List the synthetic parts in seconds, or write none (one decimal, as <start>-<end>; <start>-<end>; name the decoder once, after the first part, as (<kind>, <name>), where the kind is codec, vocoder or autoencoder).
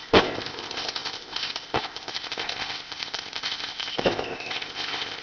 0.0-5.2 (codec, ZipCodec)